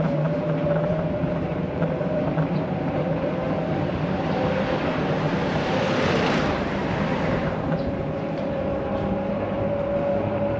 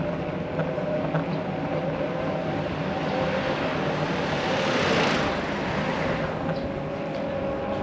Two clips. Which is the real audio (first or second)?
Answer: second